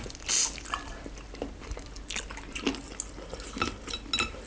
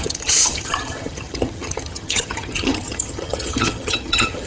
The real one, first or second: first